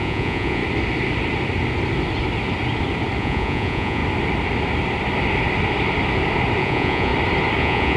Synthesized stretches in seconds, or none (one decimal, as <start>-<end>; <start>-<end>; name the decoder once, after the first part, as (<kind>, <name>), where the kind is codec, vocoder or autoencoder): 0.0-0.6 (vocoder, Vocos); 3.2-4.0; 6.6-7.1; 7.6-8.0